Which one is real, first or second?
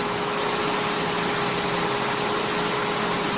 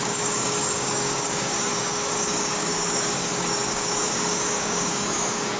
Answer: first